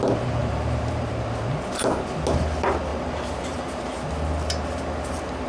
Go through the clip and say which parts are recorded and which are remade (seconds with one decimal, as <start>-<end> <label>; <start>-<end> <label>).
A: 0.0-0.4 recorded; 0.4-1.2 remade; 1.2-2.9 recorded; 2.9-3.8 remade; 3.8-5.5 recorded